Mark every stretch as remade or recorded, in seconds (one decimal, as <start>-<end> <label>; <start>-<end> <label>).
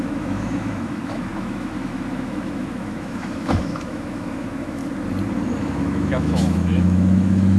0.0-4.8 remade; 4.8-5.6 recorded; 5.6-7.6 remade